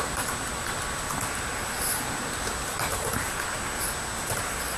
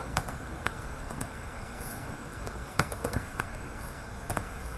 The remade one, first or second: second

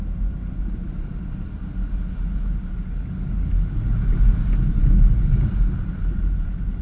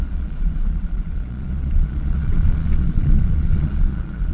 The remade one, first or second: second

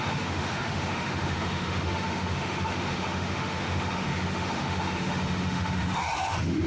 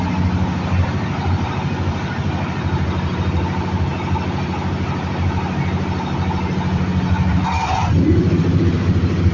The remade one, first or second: first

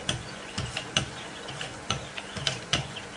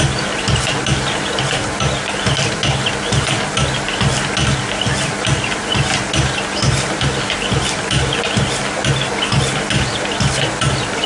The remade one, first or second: first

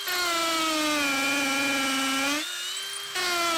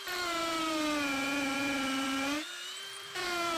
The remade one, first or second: second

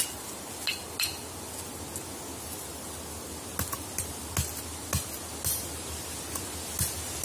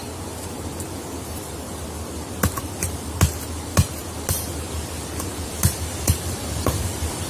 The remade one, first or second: second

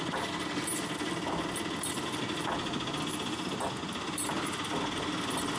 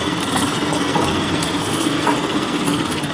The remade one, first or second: second